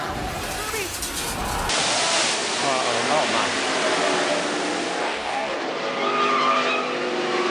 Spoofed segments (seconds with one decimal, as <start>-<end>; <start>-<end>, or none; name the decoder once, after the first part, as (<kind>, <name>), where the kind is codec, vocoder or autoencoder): 5.0-5.6 (codec, DAC)